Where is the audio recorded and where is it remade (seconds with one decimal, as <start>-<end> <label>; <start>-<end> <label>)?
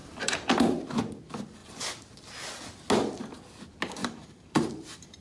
0.0-0.5 remade; 0.5-4.0 recorded; 4.0-5.2 remade